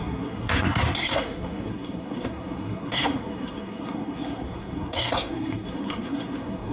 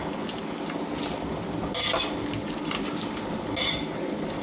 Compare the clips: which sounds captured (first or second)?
second